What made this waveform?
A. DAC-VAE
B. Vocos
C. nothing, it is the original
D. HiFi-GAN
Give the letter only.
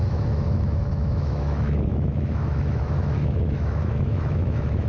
A